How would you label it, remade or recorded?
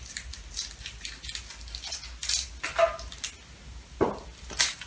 recorded